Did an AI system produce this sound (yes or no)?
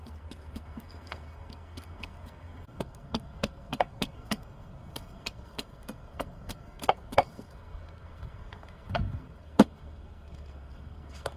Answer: yes